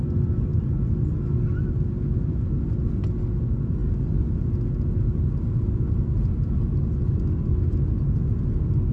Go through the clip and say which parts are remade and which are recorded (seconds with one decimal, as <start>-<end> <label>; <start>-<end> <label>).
0.0-8.9 recorded